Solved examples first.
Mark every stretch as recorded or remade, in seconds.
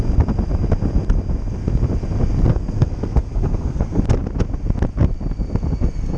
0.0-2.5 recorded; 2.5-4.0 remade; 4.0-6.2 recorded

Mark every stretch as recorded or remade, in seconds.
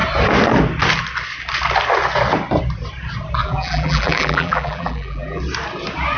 0.0-3.4 recorded; 3.4-5.4 remade; 5.4-6.2 recorded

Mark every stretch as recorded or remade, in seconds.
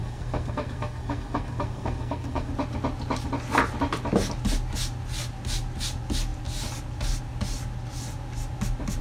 0.0-2.5 remade; 2.5-9.0 recorded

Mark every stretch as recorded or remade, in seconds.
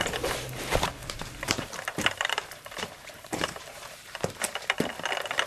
0.0-1.0 recorded; 1.0-4.3 remade; 4.3-5.5 recorded